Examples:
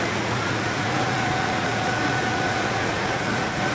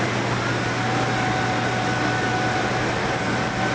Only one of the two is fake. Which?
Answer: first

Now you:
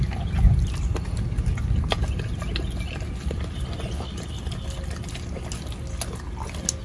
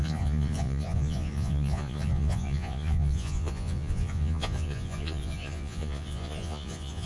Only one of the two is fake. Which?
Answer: second